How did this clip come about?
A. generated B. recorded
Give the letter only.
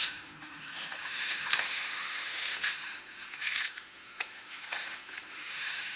A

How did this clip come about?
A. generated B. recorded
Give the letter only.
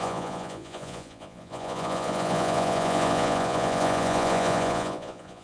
A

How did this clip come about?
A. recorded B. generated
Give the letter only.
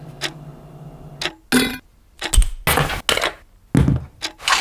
A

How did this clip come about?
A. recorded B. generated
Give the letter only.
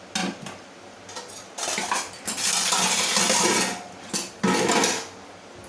A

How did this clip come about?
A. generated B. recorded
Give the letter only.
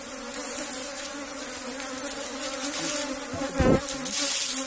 B